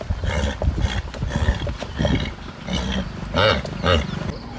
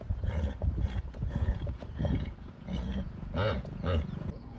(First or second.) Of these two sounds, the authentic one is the first